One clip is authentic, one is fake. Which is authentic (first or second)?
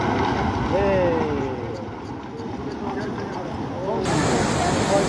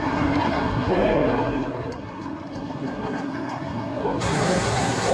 first